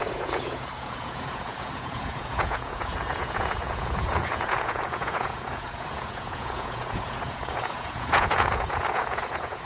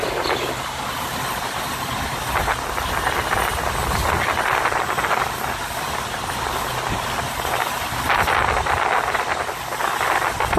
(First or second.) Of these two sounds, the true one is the second